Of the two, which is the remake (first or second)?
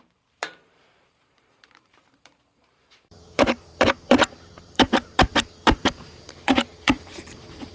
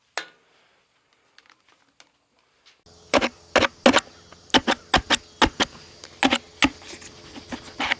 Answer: first